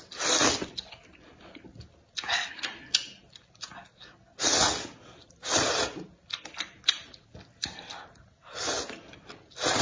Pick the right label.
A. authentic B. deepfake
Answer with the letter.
A